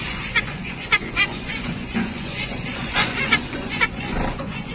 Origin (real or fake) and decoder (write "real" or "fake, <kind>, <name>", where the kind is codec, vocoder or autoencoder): fake, vocoder, Vocos